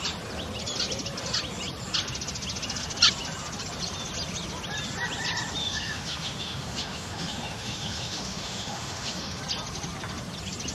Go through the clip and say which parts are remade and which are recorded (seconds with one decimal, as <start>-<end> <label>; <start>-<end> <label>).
0.0-5.6 recorded; 5.6-9.4 remade; 9.4-10.7 recorded